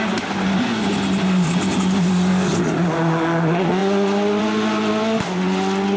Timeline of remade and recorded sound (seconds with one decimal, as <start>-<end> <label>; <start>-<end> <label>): 0.0-6.0 recorded